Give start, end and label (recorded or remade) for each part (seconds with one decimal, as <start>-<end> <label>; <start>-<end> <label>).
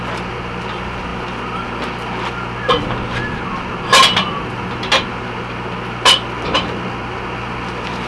0.0-8.1 recorded